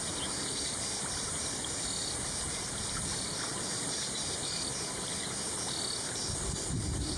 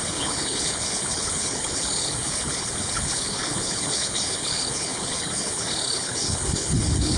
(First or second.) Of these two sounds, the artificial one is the second